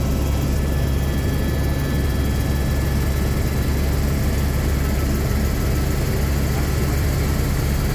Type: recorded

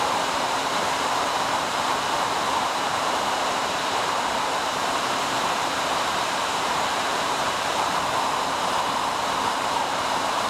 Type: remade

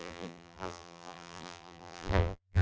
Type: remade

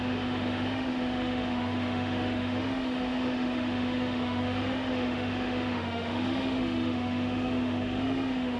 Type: remade